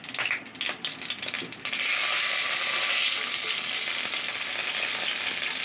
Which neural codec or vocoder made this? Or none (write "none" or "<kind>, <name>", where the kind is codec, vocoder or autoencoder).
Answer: none